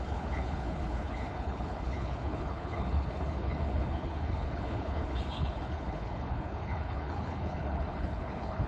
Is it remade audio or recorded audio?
remade